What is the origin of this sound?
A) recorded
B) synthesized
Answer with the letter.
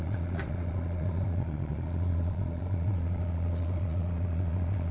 B